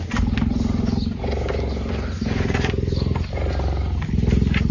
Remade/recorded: recorded